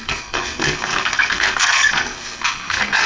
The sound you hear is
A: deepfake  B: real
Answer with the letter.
A